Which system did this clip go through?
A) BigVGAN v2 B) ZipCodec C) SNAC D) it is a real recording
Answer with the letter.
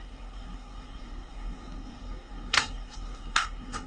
C